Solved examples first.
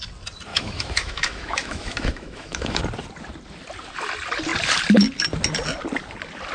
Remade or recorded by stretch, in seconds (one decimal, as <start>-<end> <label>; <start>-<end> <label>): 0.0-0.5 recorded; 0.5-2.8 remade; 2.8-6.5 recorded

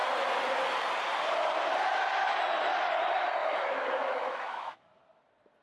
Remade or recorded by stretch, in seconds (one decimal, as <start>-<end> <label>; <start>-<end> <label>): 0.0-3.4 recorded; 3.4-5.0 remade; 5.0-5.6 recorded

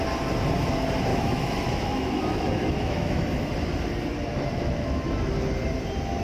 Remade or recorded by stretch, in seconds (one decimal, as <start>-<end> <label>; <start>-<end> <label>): 0.0-1.1 recorded; 1.1-3.2 remade; 3.2-4.3 recorded; 4.3-5.3 remade; 5.3-6.2 recorded

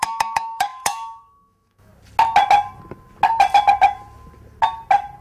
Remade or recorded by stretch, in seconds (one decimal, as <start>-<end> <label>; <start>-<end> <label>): 0.0-1.9 remade; 1.9-5.2 recorded